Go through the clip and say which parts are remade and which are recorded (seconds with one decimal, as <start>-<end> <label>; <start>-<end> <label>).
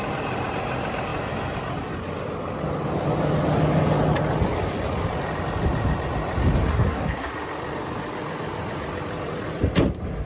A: 0.0-6.7 recorded; 6.7-7.3 remade; 7.3-10.3 recorded